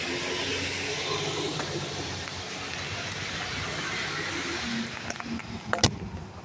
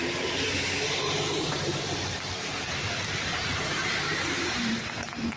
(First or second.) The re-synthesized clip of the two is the second